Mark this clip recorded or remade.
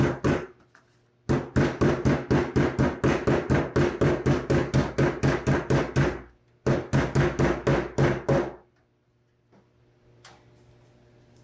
recorded